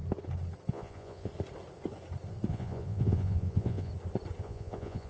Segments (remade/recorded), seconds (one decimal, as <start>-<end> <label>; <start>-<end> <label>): 0.0-0.7 recorded; 0.7-1.3 remade; 1.3-2.5 recorded; 2.5-3.9 remade; 3.9-4.4 recorded; 4.4-5.1 remade